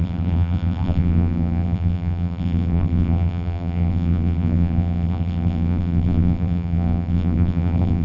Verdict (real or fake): fake